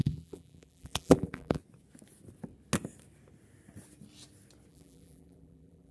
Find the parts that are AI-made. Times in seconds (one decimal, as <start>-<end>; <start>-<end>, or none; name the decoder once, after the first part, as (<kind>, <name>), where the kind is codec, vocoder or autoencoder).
0.0-1.6 (vocoder, BigVGAN v2); 4.7-5.9